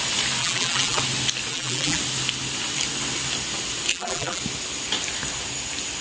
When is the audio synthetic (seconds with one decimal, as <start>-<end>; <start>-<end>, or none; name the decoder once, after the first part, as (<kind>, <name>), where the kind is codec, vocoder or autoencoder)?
0.4-1.0 (vocoder, BigVGAN v2); 1.5-2.0; 3.9-4.4